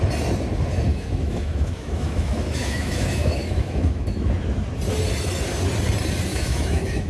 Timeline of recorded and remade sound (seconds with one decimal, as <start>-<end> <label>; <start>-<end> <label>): 0.0-0.9 recorded; 0.9-4.3 remade; 4.3-6.3 recorded; 6.3-7.1 remade